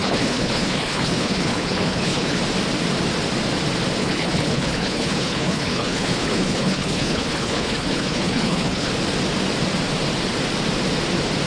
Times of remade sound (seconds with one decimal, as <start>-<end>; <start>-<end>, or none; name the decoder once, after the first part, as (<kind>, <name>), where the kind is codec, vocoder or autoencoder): 0.0-2.4 (codec, HILCodec); 4.0-8.9